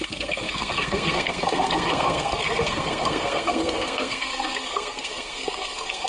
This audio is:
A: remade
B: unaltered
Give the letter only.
A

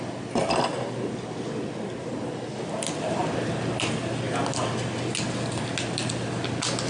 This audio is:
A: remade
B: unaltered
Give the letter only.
B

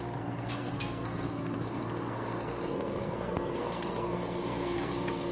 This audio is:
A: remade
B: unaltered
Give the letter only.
A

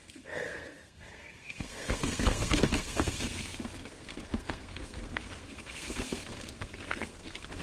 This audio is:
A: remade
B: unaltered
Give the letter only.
A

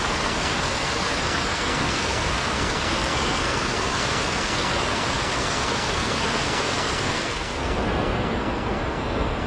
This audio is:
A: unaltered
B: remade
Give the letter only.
B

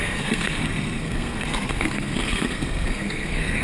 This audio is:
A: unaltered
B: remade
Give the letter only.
B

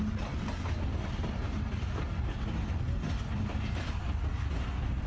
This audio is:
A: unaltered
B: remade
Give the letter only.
A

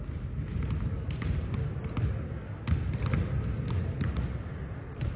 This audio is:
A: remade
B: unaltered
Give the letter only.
B